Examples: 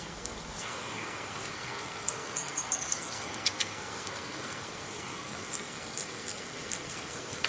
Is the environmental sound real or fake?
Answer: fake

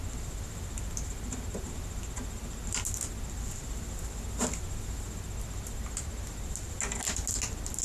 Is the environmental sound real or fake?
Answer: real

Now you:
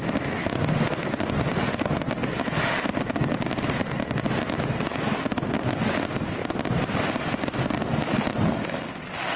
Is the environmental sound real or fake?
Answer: real